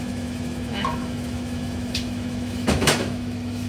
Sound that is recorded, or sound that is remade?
remade